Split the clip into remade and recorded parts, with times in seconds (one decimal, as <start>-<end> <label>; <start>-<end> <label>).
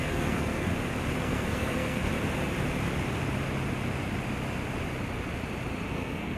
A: 0.0-0.7 remade; 0.7-1.2 recorded; 1.2-2.1 remade; 2.1-5.9 recorded; 5.9-6.4 remade